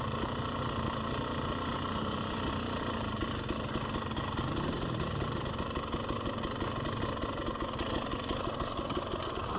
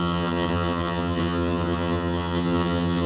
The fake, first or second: second